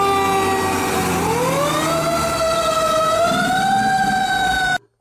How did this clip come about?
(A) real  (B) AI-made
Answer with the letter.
A